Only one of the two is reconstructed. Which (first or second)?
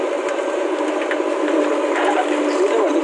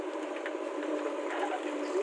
second